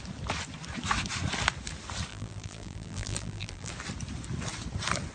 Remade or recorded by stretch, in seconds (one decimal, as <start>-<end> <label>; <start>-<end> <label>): 0.0-2.1 recorded; 2.1-3.7 remade; 3.7-5.1 recorded